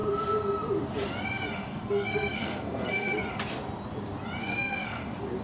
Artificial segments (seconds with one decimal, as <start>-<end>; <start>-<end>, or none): 1.7-3.3; 4.4-5.0